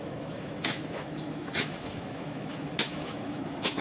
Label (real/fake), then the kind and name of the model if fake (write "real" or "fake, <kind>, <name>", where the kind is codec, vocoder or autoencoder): fake, autoencoder, DAC-VAE